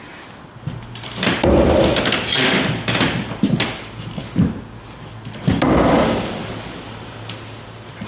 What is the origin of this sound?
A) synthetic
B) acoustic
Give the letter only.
B